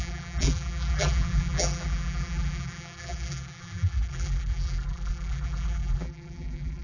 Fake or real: fake